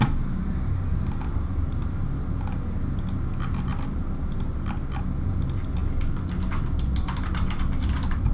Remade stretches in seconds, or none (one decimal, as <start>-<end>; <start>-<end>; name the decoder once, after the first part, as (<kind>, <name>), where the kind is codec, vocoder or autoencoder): none